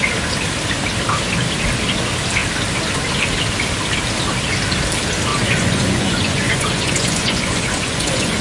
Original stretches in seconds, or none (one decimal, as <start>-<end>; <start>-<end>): 0.0-5.3